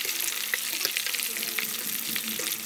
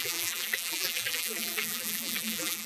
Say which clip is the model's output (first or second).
second